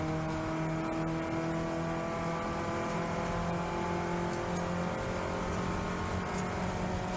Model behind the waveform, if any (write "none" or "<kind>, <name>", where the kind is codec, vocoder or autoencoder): none